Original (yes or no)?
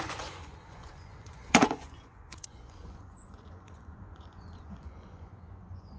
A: no